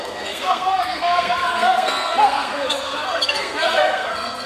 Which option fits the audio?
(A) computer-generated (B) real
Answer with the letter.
A